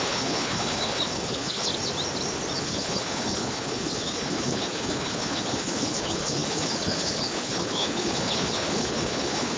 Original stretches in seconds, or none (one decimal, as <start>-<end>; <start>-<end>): 1.7-2.6